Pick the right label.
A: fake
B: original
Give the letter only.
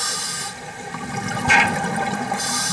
B